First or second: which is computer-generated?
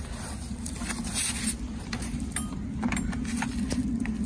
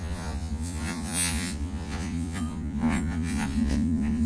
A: second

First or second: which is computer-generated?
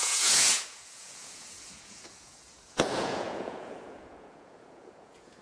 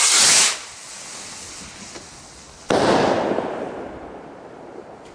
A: first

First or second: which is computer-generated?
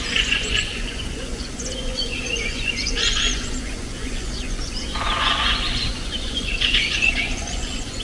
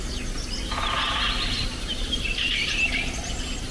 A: first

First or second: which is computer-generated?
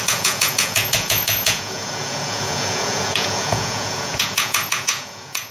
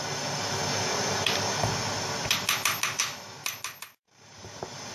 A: first